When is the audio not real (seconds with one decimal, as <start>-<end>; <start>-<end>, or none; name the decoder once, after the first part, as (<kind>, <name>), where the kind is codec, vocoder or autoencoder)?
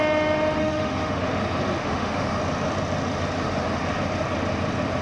0.6-1.2 (autoencoder, DAC-VAE); 1.8-2.4